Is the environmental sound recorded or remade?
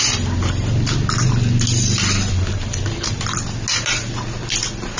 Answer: recorded